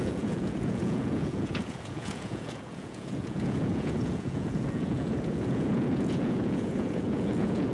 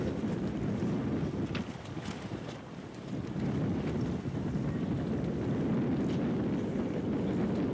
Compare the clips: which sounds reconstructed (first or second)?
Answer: first